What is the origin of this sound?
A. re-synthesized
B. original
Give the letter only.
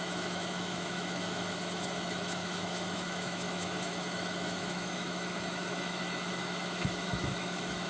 A